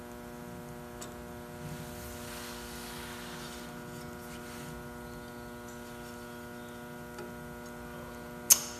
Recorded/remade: recorded